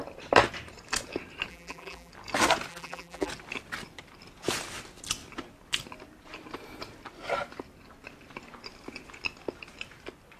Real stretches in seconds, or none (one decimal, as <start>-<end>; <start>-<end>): 0.0-1.5; 2.1-2.7; 3.3-10.4